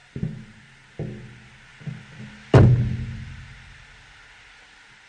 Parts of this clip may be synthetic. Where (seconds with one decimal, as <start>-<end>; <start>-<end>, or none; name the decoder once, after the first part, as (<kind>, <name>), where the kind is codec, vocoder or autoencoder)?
none